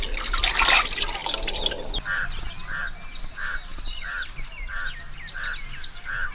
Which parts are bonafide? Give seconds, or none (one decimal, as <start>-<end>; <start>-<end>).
0.0-6.3